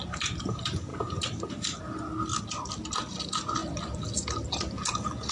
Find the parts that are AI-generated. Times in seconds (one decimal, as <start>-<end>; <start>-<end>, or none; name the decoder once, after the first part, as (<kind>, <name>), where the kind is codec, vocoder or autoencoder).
none